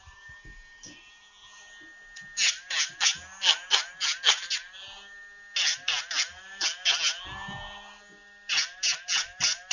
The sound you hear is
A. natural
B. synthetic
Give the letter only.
A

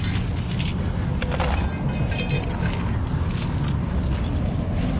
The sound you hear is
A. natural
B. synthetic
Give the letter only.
A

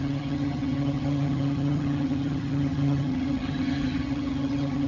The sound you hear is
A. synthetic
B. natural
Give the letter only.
A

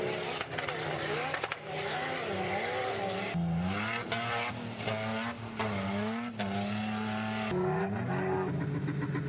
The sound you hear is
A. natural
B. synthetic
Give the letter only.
A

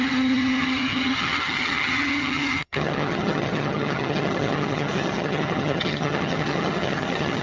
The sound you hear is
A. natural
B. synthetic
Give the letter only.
B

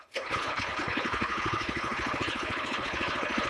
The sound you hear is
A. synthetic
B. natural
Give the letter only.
A